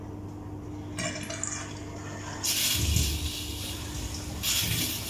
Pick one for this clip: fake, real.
real